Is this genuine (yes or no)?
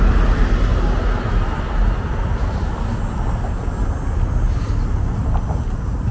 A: yes